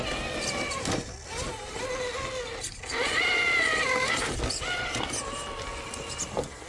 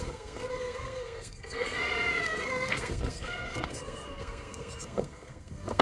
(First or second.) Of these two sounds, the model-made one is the second